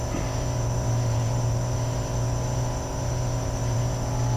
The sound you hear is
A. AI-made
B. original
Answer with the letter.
A